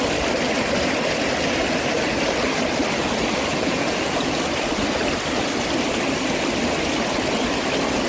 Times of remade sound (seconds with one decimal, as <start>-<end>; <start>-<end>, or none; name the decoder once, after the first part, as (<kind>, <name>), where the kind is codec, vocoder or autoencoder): 3.5-4.4 (vocoder, Vocos)